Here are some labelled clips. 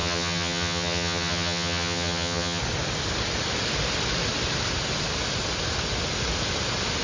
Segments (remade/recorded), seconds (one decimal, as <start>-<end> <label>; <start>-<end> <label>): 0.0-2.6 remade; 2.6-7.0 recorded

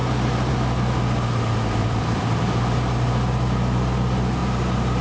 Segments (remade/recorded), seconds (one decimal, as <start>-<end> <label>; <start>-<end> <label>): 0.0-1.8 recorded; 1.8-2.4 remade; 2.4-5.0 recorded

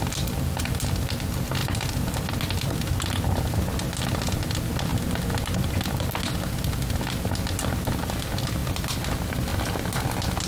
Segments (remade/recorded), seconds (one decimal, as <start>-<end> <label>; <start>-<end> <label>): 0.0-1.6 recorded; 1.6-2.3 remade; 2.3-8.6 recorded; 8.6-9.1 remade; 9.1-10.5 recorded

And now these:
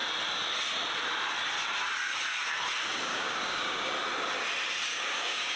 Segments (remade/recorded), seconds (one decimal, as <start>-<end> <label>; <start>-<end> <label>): 0.0-3.1 recorded; 3.1-3.9 remade; 3.9-4.9 recorded; 4.9-5.6 remade

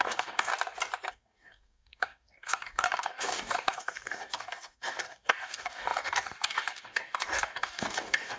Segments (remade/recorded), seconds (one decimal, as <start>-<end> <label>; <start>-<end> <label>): 0.0-0.5 remade; 0.5-1.1 recorded; 1.1-8.4 remade

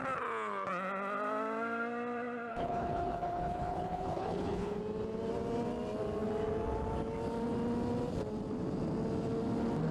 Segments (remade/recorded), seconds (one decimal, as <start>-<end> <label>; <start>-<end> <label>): 0.0-2.5 recorded; 2.5-4.8 remade; 4.8-9.9 recorded

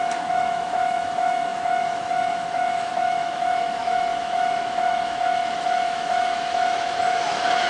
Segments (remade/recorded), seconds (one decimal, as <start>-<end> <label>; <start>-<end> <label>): 0.0-7.7 remade